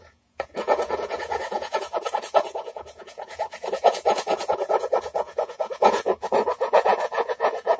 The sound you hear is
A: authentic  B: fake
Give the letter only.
B